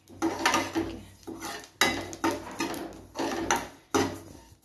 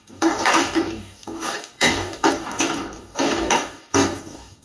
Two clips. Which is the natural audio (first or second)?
first